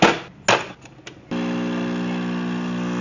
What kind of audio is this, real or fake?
real